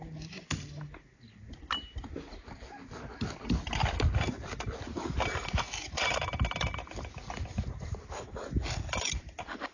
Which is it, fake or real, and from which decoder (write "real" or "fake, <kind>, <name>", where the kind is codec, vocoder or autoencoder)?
real